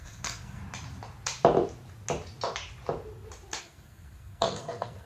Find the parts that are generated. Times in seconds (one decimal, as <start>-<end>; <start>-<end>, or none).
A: 0.0-0.6; 3.6-5.1